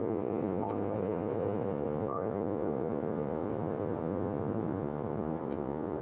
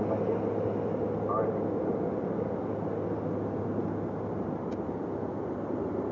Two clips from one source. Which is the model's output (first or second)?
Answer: first